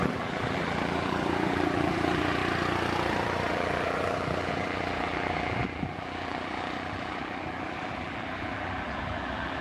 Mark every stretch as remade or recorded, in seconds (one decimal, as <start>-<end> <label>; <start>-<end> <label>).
0.0-2.4 remade; 2.4-3.5 recorded; 3.5-9.6 remade